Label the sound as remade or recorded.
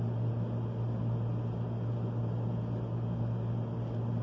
recorded